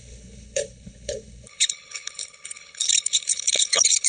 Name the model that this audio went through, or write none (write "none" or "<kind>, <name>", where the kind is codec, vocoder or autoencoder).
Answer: codec, HILCodec